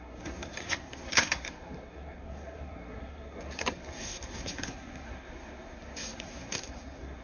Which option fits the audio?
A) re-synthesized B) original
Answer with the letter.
A